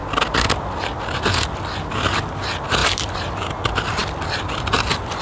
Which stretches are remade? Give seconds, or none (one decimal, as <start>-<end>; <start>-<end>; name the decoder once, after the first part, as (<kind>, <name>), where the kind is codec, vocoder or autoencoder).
2.8-3.5 (vocoder, BigVGAN v2)